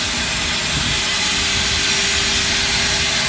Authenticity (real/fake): real